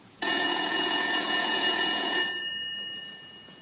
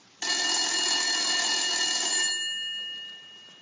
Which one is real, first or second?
second